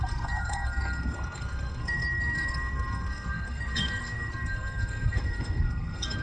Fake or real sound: fake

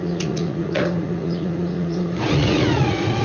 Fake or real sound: fake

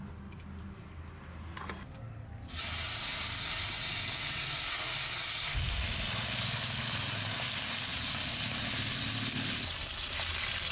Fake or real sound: real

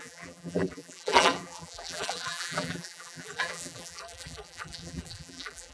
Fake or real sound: fake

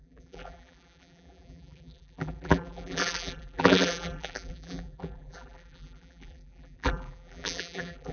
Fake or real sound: fake